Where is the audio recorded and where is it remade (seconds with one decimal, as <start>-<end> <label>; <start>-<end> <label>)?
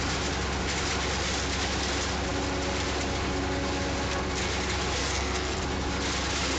0.0-5.0 recorded; 5.0-5.6 remade; 5.6-6.6 recorded